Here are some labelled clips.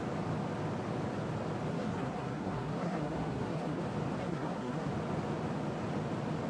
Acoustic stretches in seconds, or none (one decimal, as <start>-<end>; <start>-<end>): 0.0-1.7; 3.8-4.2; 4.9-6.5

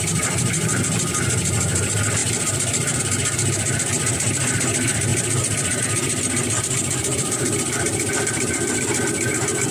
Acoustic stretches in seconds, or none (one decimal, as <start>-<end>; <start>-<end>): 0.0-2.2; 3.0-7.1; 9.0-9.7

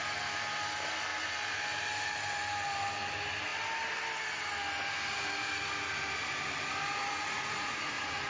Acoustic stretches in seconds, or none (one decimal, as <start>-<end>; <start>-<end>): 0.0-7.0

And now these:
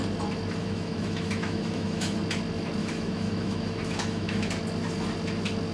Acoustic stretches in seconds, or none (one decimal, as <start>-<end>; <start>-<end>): 0.0-0.6; 2.2-2.8; 4.5-5.7